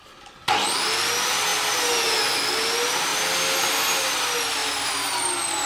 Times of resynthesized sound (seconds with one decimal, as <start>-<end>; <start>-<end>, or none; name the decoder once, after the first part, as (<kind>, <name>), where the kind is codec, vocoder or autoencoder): none